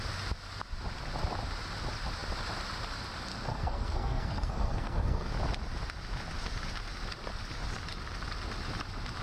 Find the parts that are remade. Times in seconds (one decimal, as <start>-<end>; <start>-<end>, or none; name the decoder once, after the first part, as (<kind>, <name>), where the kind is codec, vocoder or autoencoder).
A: 3.3-5.3 (codec, SNAC)